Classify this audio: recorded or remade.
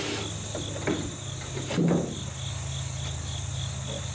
recorded